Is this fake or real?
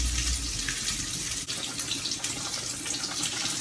real